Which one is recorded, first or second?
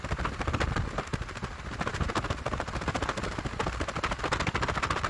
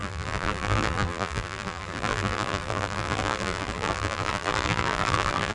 first